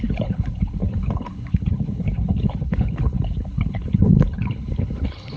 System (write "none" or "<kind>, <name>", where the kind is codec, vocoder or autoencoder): codec, HILCodec